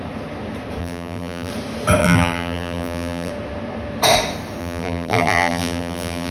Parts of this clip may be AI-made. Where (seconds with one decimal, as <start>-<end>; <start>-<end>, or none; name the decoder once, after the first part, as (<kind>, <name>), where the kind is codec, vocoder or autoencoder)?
0.8-1.5 (vocoder, BigVGAN v2); 2.0-3.3; 4.6-6.3